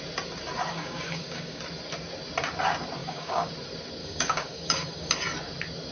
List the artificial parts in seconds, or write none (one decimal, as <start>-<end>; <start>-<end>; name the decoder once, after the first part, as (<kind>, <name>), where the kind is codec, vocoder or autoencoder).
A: 0.7-1.6 (codec, DAC); 3.0-3.5; 4.0-5.1